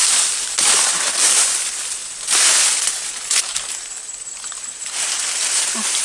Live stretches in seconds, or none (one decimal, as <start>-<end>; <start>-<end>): 2.0-5.6